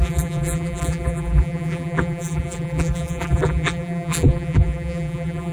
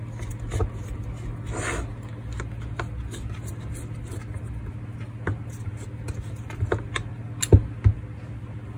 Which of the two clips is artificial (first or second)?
first